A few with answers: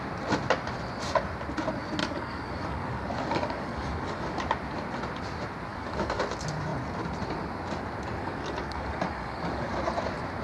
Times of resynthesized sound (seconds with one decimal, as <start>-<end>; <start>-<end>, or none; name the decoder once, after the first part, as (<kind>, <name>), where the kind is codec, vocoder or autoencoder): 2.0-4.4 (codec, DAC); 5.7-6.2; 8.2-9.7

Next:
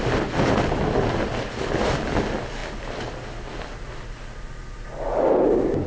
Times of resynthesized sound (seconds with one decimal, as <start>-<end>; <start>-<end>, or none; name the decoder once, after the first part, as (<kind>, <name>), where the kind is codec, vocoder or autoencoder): none

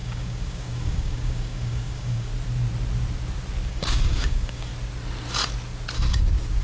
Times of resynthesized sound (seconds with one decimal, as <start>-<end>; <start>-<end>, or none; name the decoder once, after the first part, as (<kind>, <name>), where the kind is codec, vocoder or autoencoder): 0.0-2.3 (codec, DAC); 3.7-4.7

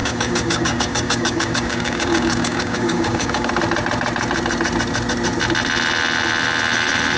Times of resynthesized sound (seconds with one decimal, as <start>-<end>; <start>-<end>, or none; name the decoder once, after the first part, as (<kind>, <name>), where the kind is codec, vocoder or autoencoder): 0.0-3.5 (codec, DAC)

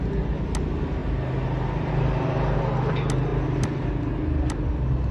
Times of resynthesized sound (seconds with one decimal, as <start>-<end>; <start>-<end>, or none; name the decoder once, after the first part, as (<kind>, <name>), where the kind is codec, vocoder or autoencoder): none

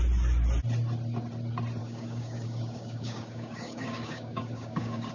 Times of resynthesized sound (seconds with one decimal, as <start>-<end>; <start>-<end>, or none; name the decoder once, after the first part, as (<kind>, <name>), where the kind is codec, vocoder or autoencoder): 1.8-5.1 (codec, DAC)

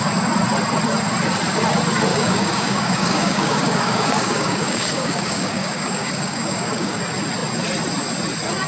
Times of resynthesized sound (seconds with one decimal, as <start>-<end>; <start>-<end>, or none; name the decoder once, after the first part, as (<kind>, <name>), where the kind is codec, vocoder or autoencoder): 2.1-7.0 (codec, DAC)

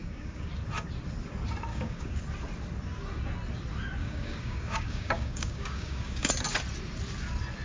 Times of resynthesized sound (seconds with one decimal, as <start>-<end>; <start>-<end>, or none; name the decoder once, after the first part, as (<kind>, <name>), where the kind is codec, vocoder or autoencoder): 0.0-0.5 (codec, DAC); 1.7-2.2; 4.0-6.3